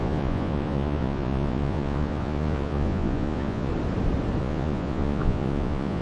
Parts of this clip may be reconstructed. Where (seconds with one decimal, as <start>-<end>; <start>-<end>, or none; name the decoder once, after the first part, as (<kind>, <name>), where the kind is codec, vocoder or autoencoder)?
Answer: 0.0-3.7 (vocoder, Vocos); 4.4-6.0